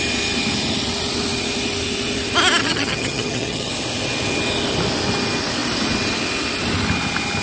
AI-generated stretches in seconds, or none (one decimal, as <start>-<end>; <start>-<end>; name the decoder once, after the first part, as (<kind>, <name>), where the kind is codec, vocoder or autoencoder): 2.6-3.7 (vocoder, HiFi-GAN)